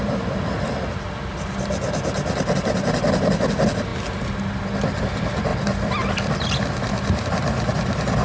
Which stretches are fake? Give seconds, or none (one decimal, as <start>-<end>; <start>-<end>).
none